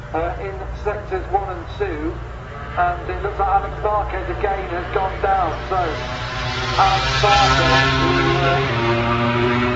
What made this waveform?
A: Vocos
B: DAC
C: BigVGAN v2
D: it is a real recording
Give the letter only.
D